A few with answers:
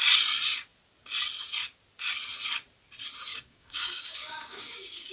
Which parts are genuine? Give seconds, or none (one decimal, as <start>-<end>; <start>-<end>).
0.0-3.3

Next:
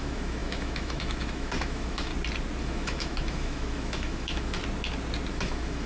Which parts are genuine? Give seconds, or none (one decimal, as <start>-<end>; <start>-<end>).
2.1-2.6; 4.6-5.3

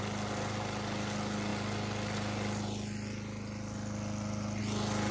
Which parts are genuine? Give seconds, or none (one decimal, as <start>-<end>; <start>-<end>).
0.0-5.1

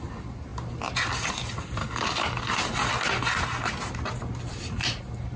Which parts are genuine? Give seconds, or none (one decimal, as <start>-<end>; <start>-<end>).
0.0-1.8; 2.4-5.4